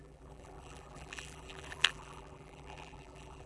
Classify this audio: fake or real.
fake